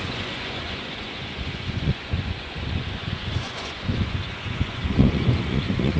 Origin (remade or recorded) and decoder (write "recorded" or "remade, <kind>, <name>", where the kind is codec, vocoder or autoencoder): remade, vocoder, Vocos